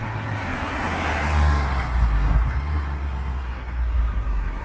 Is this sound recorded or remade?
remade